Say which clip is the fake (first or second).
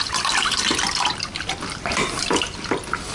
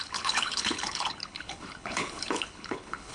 second